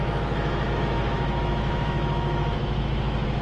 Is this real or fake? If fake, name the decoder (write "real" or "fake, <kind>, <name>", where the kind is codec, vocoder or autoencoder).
fake, autoencoder, DAC-VAE